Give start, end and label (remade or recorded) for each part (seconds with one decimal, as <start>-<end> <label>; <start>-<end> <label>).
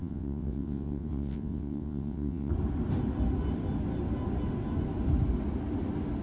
0.0-2.5 remade; 2.5-6.2 recorded